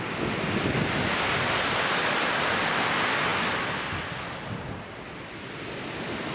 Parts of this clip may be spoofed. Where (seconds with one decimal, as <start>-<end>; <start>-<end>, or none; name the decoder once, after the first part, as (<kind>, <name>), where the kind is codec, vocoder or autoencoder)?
none